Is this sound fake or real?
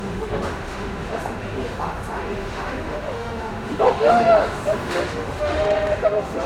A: fake